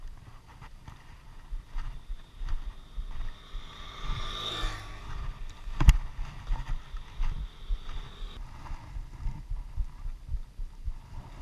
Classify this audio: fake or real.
real